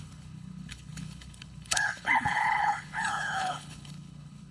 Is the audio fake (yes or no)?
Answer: yes